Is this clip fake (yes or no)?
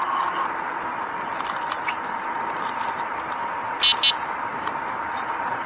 no